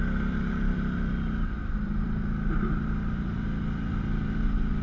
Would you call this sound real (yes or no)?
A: no